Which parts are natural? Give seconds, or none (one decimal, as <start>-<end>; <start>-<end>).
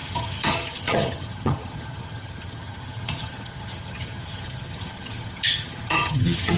none